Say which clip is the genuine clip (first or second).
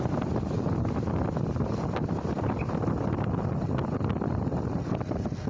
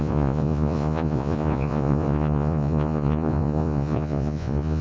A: first